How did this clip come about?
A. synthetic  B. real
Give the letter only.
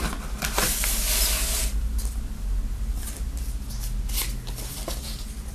B